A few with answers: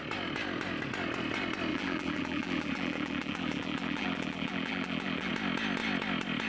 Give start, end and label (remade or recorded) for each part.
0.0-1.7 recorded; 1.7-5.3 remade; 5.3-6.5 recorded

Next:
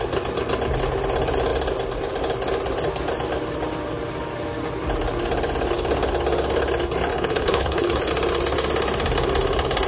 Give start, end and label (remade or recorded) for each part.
0.0-7.1 recorded; 7.1-8.1 remade; 8.1-9.9 recorded

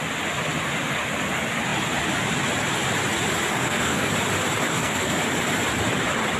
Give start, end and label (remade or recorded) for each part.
0.0-3.5 recorded; 3.5-4.1 remade; 4.1-4.7 recorded; 4.7-5.2 remade; 5.2-6.4 recorded

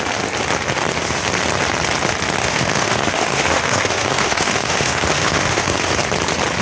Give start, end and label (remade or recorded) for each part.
0.0-2.4 recorded; 2.4-5.9 remade; 5.9-6.6 recorded

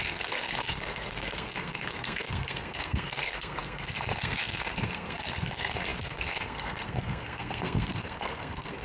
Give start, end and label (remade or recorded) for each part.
0.0-8.8 remade

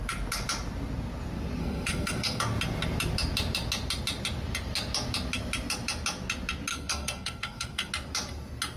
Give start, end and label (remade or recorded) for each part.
0.0-1.6 recorded; 1.6-2.4 remade; 2.4-6.7 recorded; 6.7-7.9 remade; 7.9-8.8 recorded